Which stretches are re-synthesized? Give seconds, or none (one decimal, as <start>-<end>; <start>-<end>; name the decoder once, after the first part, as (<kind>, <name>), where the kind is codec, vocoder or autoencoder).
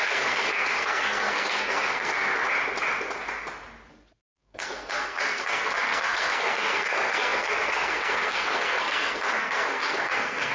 0.0-2.3 (codec, SNAC); 4.2-10.5